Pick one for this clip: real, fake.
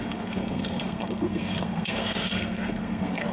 fake